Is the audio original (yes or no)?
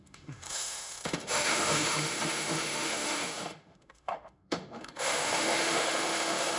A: no